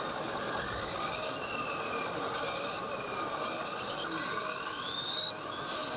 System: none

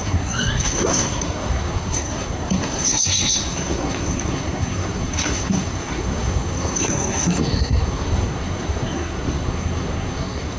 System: codec, SNAC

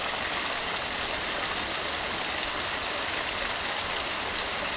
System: none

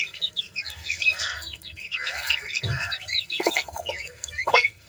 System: codec, SNAC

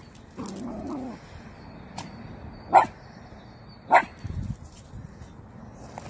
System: none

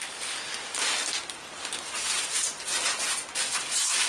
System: none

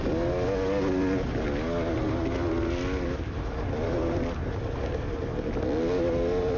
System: none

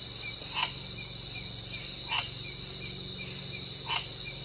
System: none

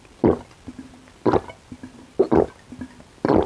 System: none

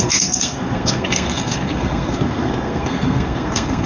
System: codec, SNAC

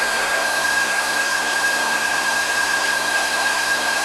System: codec, SNAC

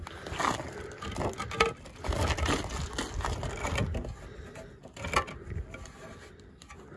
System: none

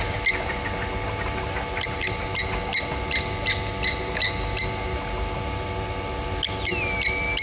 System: none